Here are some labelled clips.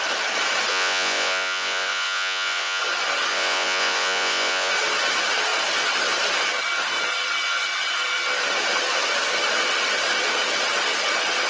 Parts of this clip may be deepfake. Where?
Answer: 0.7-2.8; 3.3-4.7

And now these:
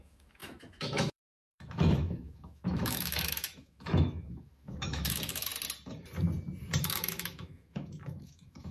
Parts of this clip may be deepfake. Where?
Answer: 0.0-5.5; 6.8-8.7

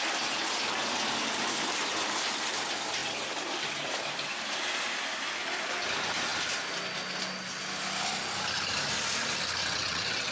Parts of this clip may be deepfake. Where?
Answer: 9.6-10.3